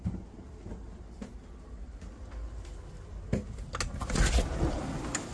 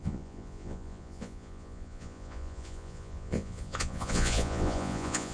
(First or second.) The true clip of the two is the first